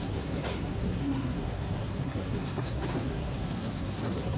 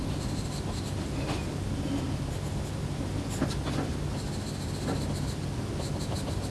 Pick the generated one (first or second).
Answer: first